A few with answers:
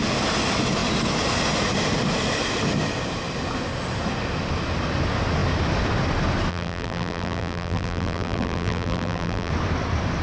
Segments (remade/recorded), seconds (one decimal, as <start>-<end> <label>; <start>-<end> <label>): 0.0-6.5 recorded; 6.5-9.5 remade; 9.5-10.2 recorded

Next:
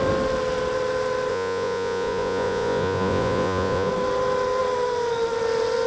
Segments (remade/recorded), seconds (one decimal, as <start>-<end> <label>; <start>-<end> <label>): 0.0-1.3 recorded; 1.3-3.9 remade; 3.9-5.9 recorded

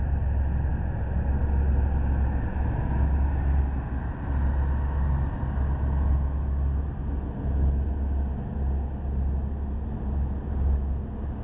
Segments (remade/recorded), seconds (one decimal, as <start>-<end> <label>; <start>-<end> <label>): 0.0-11.4 recorded

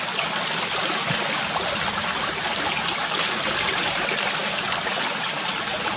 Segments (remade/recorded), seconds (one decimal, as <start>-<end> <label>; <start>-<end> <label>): 0.0-6.0 recorded

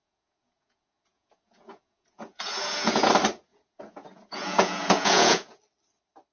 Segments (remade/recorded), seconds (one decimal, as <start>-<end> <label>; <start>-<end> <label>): 0.0-3.1 remade; 3.1-3.5 recorded; 3.5-5.6 remade; 5.6-6.3 recorded